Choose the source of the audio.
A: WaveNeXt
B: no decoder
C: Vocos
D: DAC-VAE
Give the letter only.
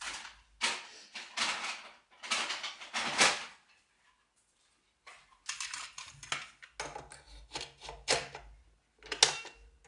B